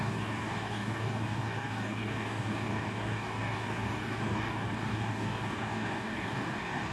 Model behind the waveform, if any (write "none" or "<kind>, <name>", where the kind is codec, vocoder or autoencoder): codec, DAC